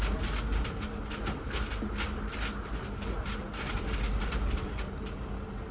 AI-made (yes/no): no